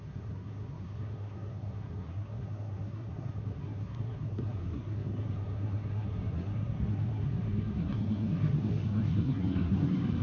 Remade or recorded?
remade